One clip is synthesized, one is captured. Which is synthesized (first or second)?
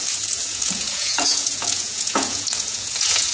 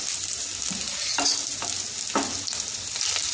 first